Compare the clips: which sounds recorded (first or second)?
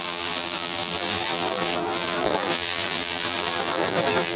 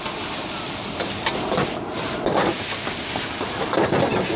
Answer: second